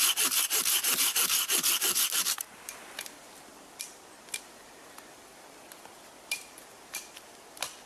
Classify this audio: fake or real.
fake